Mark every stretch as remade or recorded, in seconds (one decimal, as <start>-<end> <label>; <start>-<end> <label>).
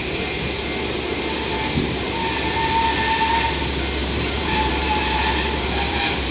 0.0-4.0 recorded; 4.0-6.3 remade